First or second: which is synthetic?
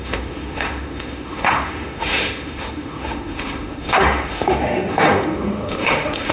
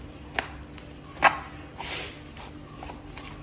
first